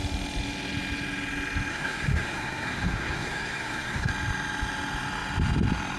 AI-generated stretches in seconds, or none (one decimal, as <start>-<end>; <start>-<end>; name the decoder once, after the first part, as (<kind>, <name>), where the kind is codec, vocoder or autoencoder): 1.7-4.1 (codec, SNAC)